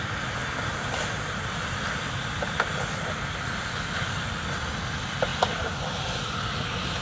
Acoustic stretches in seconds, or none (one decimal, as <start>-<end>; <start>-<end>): 0.0-0.4; 4.6-5.3; 6.0-7.0